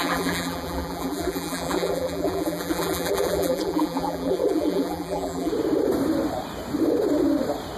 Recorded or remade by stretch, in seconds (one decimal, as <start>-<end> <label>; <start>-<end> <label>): 0.0-5.5 remade; 5.5-7.8 recorded